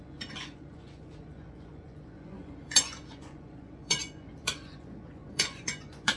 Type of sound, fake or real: fake